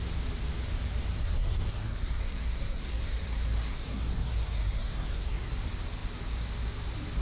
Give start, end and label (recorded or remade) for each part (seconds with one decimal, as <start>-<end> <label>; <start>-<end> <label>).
0.0-1.2 recorded; 1.2-5.5 remade; 5.5-7.2 recorded